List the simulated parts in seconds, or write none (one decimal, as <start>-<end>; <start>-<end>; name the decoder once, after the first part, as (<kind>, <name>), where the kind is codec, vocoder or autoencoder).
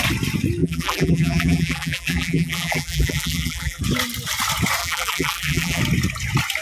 0.6-3.8 (vocoder, BigVGAN v2); 4.8-5.8